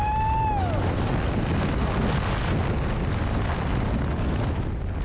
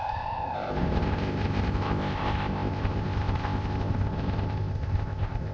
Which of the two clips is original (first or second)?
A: first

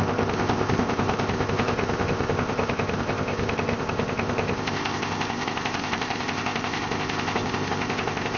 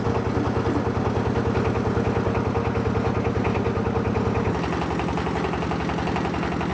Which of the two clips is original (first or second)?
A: second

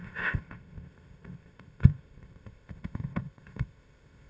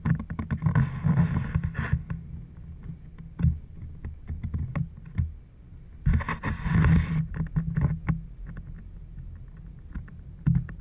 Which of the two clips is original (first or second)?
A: second